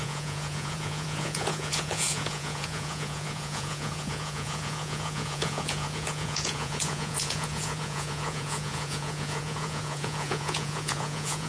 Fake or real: fake